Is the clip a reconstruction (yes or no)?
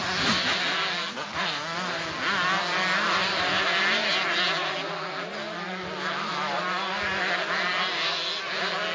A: no